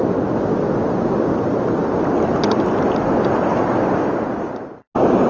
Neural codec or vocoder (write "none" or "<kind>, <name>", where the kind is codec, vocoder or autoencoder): none